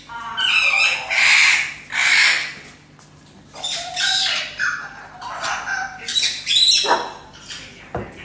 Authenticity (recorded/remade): recorded